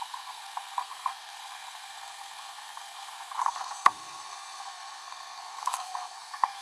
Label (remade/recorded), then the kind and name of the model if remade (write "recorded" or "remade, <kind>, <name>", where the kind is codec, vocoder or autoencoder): remade, codec, SNAC